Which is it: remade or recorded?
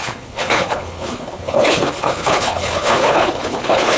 remade